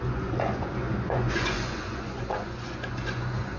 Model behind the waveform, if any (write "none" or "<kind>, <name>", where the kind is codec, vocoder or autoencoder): vocoder, Vocos